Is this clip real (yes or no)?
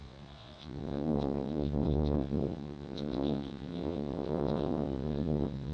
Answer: no